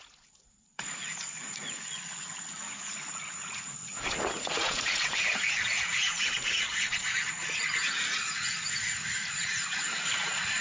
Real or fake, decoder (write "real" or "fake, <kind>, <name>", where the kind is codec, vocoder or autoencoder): fake, vocoder, Vocos